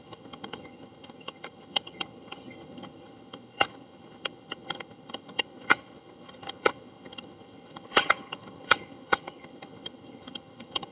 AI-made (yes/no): yes